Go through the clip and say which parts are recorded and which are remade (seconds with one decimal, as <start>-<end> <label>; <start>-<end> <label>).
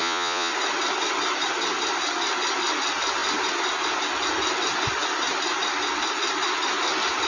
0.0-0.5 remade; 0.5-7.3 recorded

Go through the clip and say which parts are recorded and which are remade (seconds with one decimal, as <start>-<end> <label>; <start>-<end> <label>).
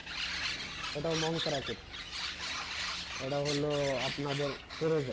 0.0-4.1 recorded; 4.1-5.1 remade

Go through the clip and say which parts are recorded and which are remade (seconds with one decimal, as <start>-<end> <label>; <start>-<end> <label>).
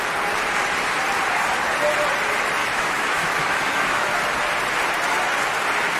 0.0-2.6 recorded; 2.6-4.1 remade; 4.1-6.0 recorded